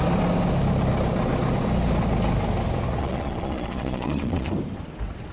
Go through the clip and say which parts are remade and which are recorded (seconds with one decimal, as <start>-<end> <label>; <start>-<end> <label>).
0.0-3.0 recorded; 3.0-4.5 remade; 4.5-5.3 recorded